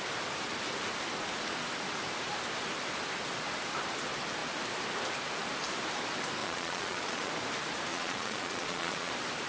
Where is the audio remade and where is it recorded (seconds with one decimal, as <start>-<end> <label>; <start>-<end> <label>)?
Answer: 0.0-6.4 recorded; 6.4-7.3 remade; 7.3-7.9 recorded; 7.9-9.1 remade; 9.1-9.5 recorded